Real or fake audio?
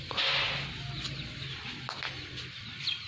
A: real